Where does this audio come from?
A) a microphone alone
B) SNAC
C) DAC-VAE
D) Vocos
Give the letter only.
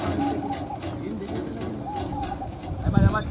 A